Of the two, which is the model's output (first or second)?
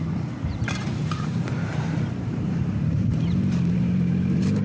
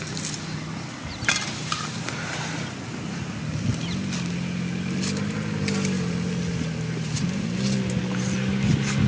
first